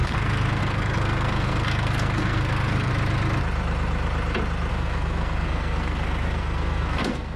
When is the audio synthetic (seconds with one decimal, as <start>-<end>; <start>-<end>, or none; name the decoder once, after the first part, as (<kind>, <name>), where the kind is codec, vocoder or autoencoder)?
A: 0.0-2.9 (codec, SNAC); 4.7-7.4